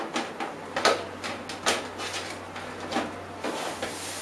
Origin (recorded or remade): recorded